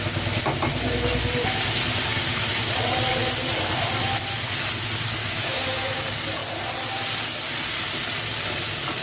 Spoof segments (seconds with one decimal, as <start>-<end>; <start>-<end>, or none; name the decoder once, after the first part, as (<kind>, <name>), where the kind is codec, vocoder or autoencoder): 2.1-2.6 (autoencoder, DAC-VAE); 5.2-6.0